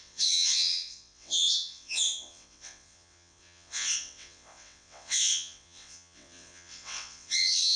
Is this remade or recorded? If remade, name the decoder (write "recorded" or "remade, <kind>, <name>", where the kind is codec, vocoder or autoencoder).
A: remade, vocoder, WaveNeXt